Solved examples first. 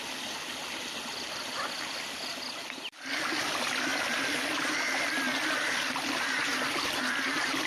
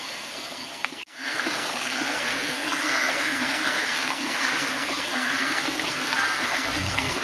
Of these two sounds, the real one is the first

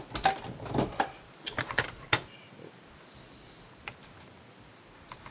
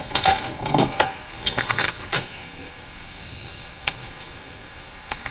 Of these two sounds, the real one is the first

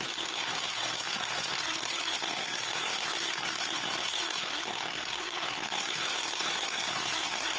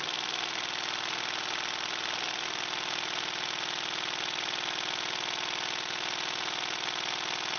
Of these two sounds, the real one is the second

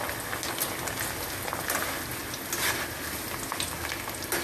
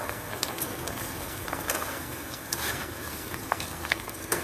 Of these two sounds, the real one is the first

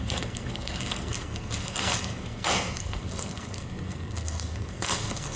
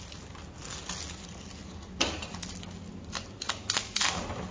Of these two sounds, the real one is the second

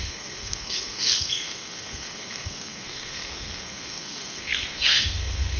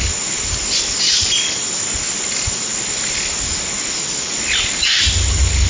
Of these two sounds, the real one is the second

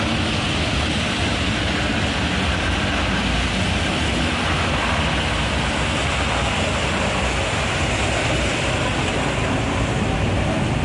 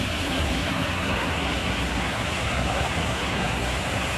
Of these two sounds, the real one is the first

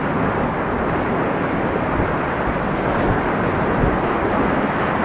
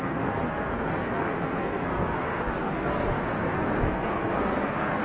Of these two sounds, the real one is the first